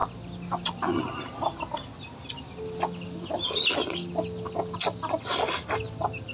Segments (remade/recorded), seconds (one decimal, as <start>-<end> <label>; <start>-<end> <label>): 0.0-6.3 recorded